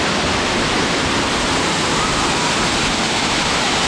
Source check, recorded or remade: recorded